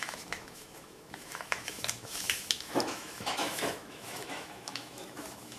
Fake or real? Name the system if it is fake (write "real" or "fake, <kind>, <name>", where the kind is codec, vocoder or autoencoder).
fake, autoencoder, DAC-VAE